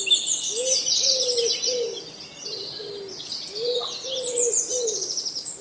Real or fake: real